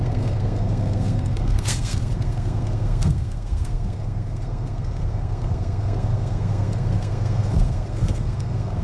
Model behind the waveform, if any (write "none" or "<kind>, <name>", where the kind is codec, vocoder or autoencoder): codec, SNAC